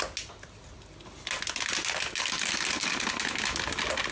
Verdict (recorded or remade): recorded